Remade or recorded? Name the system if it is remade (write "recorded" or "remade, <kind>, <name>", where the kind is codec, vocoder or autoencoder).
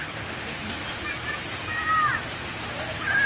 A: recorded